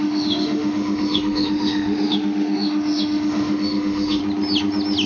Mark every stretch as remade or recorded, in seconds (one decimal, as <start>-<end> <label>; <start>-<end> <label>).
0.0-4.2 remade; 4.2-5.1 recorded